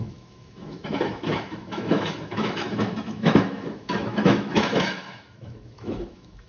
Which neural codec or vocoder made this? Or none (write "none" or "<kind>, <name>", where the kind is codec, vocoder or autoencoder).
autoencoder, DAC-VAE